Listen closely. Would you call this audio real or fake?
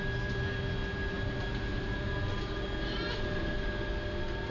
real